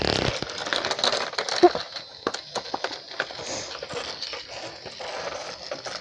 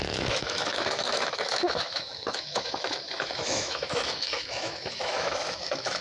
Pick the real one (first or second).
first